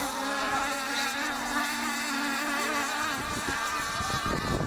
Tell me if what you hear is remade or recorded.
recorded